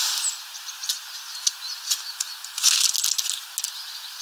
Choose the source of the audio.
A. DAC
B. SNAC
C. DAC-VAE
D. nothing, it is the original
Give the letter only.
D